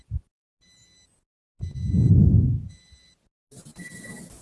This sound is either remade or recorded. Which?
recorded